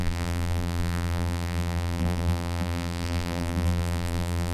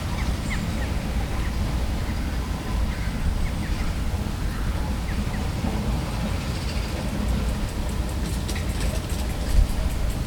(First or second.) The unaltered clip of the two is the second